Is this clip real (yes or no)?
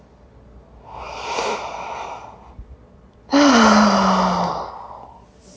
yes